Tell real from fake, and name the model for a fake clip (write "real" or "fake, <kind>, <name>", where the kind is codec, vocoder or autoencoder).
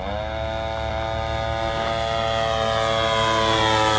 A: real